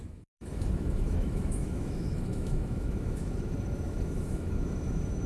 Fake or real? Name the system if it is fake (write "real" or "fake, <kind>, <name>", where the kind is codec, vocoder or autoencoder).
fake, autoencoder, DAC-VAE